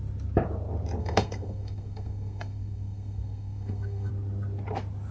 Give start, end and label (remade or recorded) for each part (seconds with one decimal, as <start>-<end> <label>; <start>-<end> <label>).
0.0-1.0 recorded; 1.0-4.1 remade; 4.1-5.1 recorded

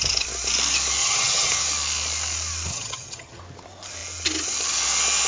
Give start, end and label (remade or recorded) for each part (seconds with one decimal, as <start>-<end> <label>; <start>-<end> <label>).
0.0-1.0 recorded; 1.0-1.5 remade; 1.5-2.7 recorded; 2.7-3.4 remade; 3.4-5.3 recorded

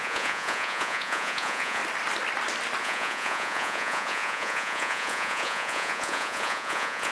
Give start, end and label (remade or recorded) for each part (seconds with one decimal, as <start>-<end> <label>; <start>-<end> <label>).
0.0-1.8 remade; 1.8-2.8 recorded; 2.8-7.1 remade